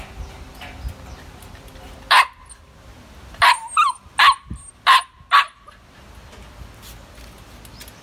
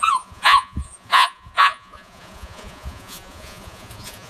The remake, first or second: second